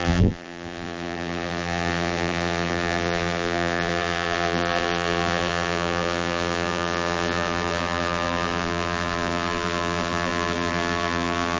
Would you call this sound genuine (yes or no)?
no